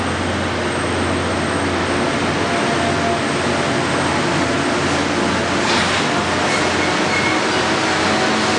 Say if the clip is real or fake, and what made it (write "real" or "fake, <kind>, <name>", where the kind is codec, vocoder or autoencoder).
real